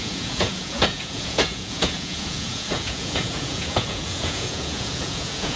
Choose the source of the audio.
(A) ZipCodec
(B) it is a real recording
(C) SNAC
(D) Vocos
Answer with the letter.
D